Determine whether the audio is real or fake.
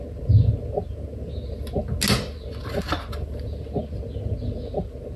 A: real